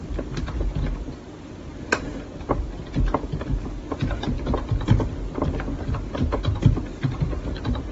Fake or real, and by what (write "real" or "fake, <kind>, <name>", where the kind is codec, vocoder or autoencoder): real